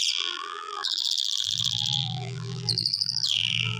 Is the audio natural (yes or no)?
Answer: no